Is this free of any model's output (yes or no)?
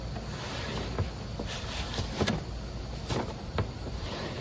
yes